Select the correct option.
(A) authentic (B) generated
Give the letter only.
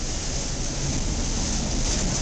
A